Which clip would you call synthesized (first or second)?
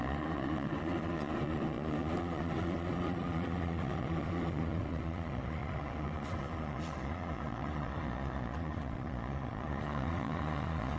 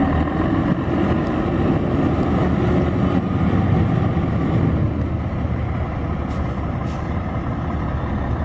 first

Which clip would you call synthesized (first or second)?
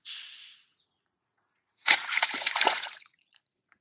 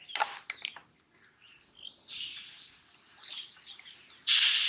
first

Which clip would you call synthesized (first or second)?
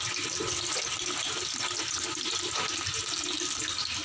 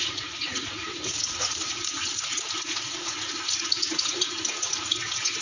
second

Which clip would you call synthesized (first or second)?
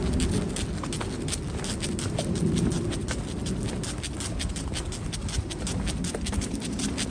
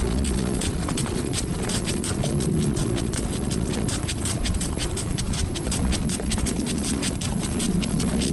second